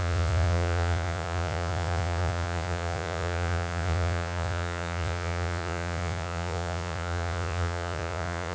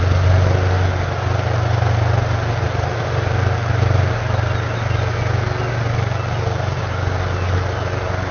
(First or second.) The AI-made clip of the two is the first